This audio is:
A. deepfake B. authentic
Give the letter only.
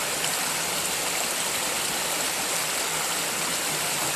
B